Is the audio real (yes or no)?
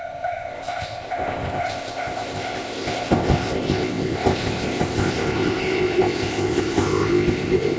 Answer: no